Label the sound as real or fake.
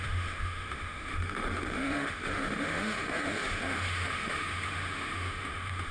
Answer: fake